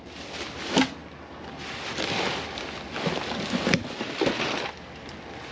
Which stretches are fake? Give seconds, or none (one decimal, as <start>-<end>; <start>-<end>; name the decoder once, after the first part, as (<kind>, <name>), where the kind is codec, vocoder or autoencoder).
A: none